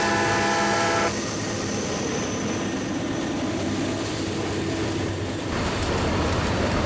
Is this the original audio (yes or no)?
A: yes